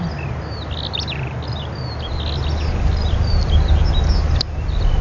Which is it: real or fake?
real